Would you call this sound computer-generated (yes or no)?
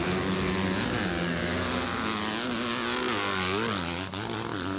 no